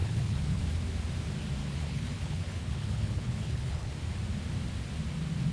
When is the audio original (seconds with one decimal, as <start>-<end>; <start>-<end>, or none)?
0.6-1.6; 3.9-5.5